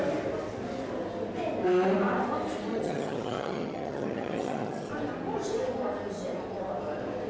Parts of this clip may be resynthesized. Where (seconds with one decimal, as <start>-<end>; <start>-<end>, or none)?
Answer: 2.7-4.9